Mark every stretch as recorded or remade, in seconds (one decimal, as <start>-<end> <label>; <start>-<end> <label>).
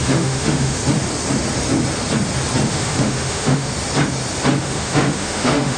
0.0-0.8 remade; 0.8-2.7 recorded; 2.7-3.7 remade; 3.7-4.6 recorded; 4.6-5.8 remade